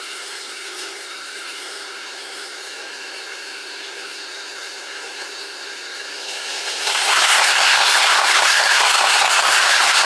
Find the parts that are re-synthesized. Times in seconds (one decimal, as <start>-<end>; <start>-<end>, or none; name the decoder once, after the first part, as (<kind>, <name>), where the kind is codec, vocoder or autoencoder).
0.0-10.0 (codec, SNAC)